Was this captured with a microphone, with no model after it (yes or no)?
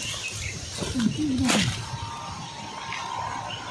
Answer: yes